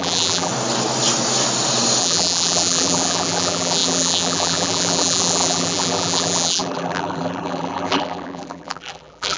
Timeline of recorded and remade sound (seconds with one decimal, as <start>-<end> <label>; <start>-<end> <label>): 0.0-0.5 remade; 0.5-2.0 recorded; 2.0-9.4 remade